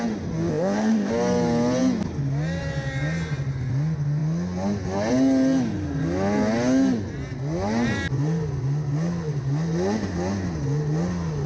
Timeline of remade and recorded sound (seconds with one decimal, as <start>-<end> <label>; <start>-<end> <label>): 0.0-0.5 recorded; 0.5-1.1 remade; 1.1-11.5 recorded